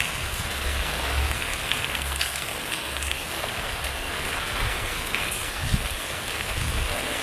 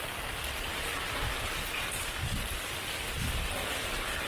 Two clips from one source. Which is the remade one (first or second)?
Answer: first